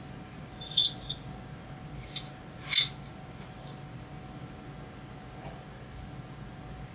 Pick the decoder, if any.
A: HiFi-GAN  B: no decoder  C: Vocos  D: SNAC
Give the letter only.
B